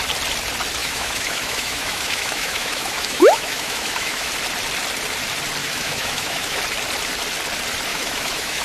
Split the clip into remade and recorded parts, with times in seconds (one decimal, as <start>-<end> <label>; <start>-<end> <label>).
0.0-0.8 recorded; 0.8-4.3 remade; 4.3-5.6 recorded; 5.6-6.6 remade; 6.6-7.9 recorded; 7.9-8.6 remade